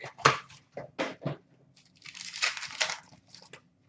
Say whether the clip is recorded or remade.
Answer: recorded